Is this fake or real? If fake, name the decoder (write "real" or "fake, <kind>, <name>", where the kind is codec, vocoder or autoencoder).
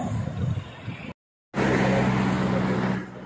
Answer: real